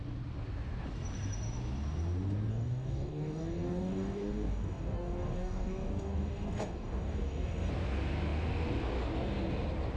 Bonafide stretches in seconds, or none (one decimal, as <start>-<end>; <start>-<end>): 0.0-2.5; 7.7-10.0